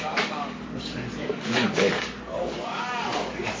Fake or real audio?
fake